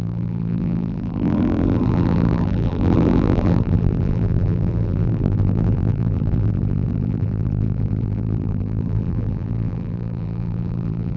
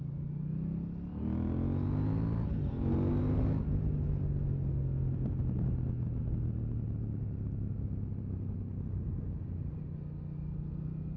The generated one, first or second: first